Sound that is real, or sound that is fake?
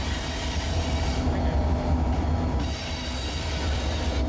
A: real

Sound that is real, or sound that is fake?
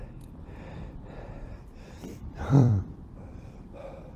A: fake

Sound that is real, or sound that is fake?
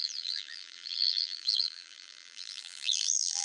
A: fake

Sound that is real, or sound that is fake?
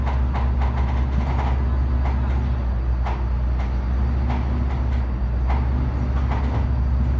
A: real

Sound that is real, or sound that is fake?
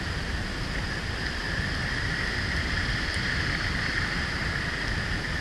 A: real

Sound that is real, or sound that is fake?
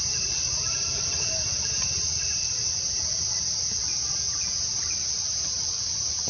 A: fake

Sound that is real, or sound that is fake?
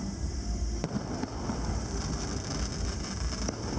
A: fake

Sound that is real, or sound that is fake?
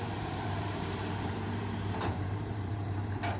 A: fake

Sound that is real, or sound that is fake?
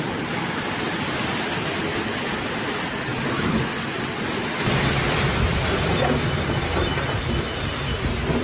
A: real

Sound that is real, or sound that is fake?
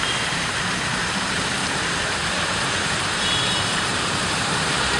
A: fake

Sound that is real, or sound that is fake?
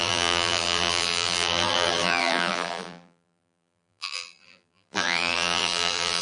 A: fake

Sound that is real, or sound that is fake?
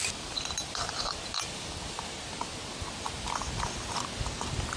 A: real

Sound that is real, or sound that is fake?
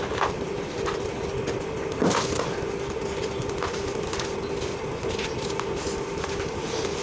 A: real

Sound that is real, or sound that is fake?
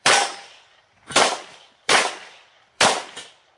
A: fake